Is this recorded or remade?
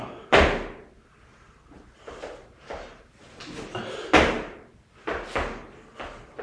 recorded